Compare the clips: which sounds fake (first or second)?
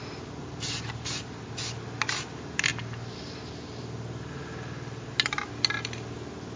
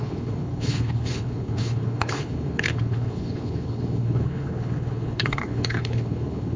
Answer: second